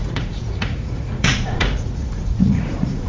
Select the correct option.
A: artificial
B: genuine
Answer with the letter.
A